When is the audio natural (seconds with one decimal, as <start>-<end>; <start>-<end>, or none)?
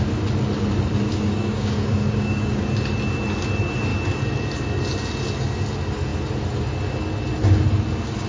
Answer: 0.0-1.1; 2.6-8.3